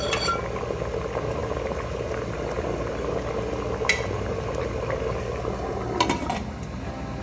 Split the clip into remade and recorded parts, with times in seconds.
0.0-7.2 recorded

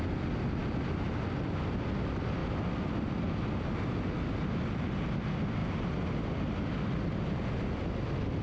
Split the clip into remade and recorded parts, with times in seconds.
0.0-8.4 recorded

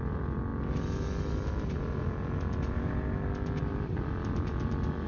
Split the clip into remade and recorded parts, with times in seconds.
0.0-0.5 remade; 0.5-3.6 recorded; 3.6-5.1 remade

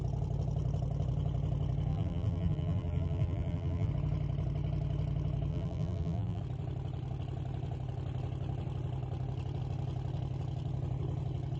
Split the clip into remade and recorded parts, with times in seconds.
0.0-1.9 recorded; 1.9-3.9 remade; 3.9-5.5 recorded; 5.5-6.4 remade; 6.4-11.6 recorded

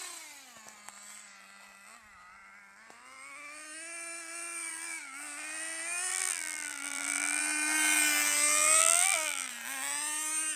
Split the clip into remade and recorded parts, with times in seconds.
0.0-6.1 recorded; 6.1-7.4 remade; 7.4-8.8 recorded; 8.8-9.5 remade; 9.5-10.6 recorded